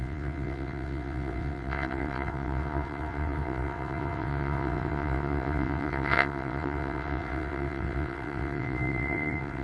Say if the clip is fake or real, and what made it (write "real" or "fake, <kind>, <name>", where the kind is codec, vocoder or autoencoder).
fake, vocoder, WaveNeXt